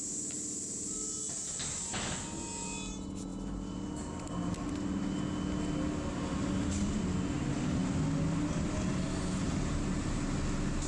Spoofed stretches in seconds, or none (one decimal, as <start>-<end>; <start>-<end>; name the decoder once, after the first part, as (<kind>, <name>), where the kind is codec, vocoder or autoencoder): none